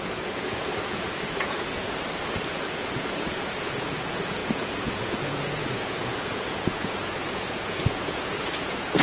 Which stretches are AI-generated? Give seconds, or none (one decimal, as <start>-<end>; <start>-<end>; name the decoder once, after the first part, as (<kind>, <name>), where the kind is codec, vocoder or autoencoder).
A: 0.0-9.0 (vocoder, Vocos)